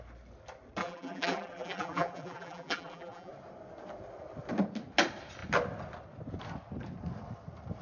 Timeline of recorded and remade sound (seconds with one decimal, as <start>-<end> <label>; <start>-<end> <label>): 0.0-0.8 recorded; 0.8-3.3 remade; 3.3-7.8 recorded